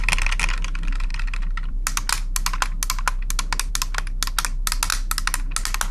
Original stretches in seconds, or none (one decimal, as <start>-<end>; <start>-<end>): 0.0-5.9